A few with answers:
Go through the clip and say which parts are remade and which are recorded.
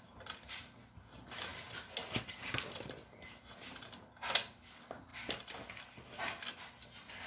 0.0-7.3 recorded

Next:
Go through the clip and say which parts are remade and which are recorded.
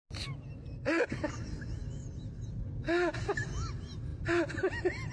0.0-5.1 recorded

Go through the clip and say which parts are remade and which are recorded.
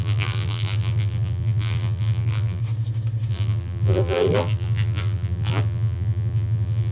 0.0-2.6 remade; 2.6-3.3 recorded; 3.3-6.9 remade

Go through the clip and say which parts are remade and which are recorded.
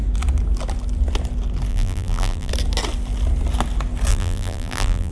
0.0-1.7 recorded; 1.7-2.5 remade; 2.5-4.1 recorded; 4.1-5.1 remade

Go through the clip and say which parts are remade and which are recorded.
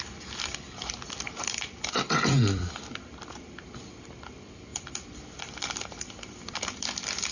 0.0-7.3 remade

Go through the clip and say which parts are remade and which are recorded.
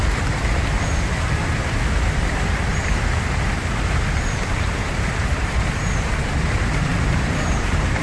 0.0-3.8 recorded; 3.8-8.0 remade